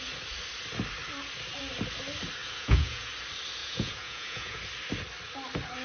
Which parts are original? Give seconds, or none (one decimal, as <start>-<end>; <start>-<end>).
0.0-2.4; 3.1-3.6; 4.6-5.8